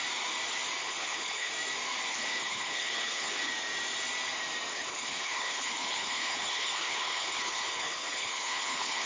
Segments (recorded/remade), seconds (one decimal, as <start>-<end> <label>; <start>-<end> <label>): 0.0-0.8 recorded; 0.8-1.5 remade; 1.5-2.1 recorded; 2.1-3.5 remade; 3.5-4.7 recorded; 4.7-9.1 remade